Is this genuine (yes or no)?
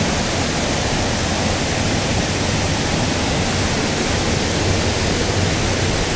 yes